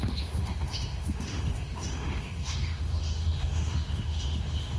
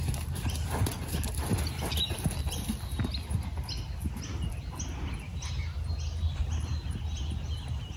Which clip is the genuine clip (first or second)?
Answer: second